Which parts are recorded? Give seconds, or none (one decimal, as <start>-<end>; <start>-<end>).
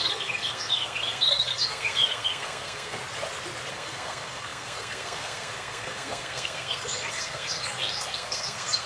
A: 3.0-3.7